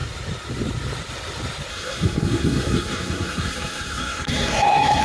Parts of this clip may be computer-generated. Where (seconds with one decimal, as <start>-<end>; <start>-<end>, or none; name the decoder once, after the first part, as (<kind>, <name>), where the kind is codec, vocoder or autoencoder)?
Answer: 1.7-5.0 (codec, SNAC)